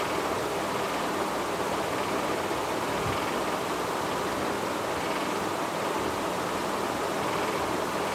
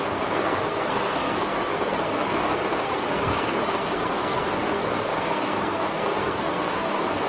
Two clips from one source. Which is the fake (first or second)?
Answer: second